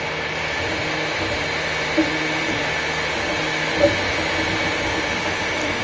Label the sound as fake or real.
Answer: real